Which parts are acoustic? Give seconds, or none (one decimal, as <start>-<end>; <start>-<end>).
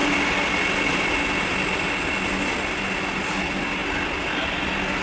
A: 0.0-5.0